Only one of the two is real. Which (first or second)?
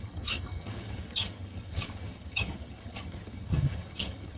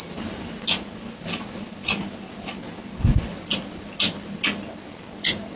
second